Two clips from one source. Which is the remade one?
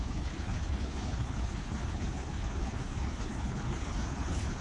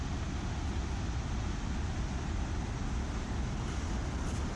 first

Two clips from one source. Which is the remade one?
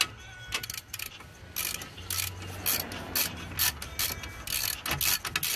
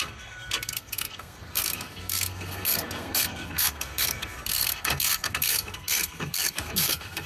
second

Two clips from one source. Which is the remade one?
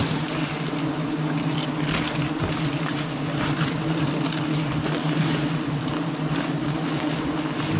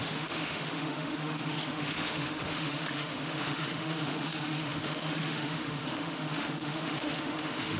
second